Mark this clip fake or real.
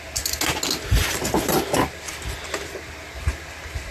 real